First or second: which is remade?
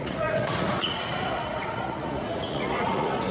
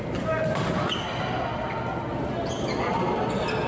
first